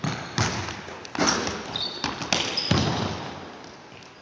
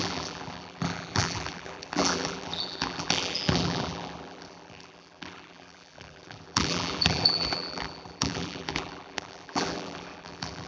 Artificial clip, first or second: second